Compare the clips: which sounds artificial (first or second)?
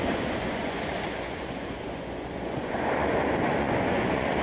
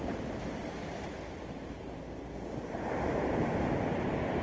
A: first